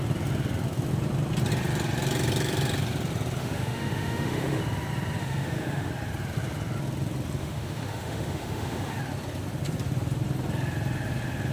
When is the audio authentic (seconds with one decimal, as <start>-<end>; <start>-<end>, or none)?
0.0-3.4; 4.6-5.2; 5.9-7.4; 9.0-11.5